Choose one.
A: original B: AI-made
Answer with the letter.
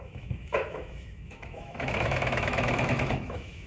B